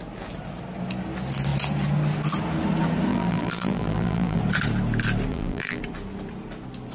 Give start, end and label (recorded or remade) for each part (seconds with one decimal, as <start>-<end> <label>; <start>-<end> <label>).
0.0-3.1 recorded; 3.1-4.4 remade; 4.4-5.3 recorded; 5.3-5.8 remade; 5.8-6.9 recorded